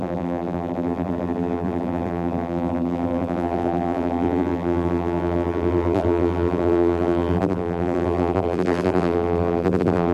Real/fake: fake